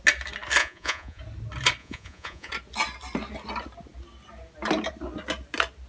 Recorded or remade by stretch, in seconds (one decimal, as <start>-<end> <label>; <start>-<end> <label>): 0.0-0.6 recorded; 0.6-1.2 remade; 1.2-1.8 recorded; 1.8-2.5 remade; 2.5-5.9 recorded